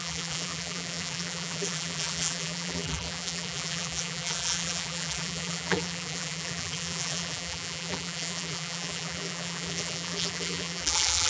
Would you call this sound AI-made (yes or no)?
yes